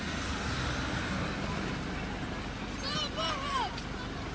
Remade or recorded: recorded